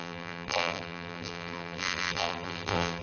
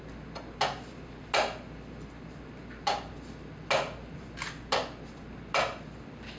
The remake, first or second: first